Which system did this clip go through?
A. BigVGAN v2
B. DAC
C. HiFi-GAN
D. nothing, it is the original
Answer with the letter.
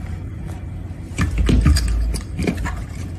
D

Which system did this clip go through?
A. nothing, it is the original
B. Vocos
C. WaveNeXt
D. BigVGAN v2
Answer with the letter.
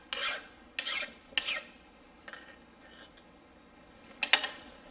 A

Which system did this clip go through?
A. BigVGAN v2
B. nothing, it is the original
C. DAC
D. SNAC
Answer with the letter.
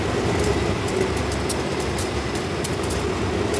B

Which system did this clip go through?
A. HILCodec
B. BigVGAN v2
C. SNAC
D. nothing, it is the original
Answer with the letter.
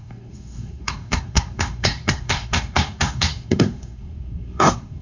C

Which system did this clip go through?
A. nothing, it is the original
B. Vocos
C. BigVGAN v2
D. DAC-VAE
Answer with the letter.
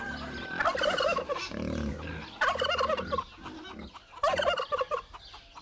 A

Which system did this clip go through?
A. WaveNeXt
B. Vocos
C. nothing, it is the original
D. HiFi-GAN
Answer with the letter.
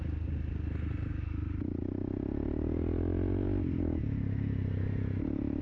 C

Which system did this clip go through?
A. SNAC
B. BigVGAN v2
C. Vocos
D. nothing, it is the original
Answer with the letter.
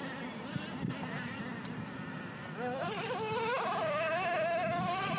D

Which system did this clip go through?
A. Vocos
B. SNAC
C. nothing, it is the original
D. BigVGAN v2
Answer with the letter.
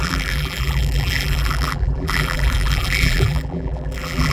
D